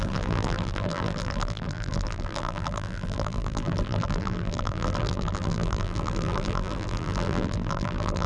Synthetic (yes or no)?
yes